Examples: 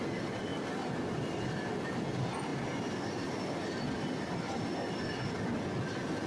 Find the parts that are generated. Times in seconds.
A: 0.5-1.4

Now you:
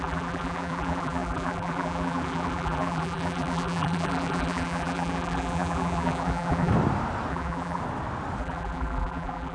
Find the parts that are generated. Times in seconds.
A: 0.0-6.7; 7.3-7.8; 8.4-9.5